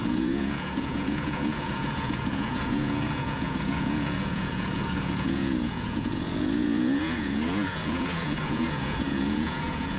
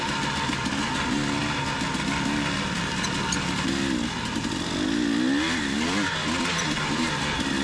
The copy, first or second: first